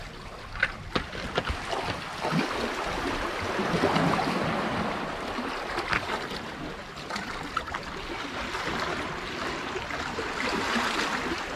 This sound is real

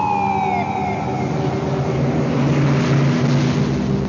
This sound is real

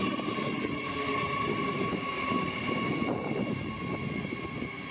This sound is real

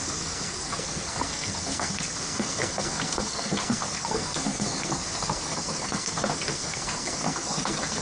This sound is fake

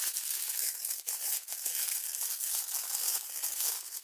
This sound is fake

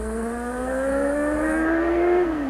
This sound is fake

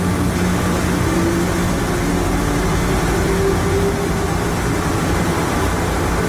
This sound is real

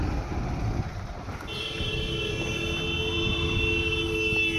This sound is real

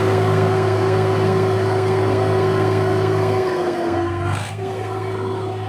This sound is fake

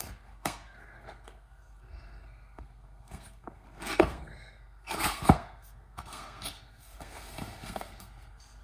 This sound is fake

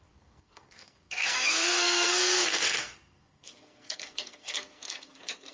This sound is fake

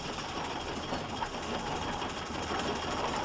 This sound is real